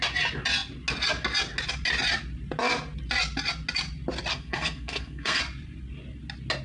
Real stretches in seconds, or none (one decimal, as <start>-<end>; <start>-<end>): 0.0-4.3; 5.4-6.6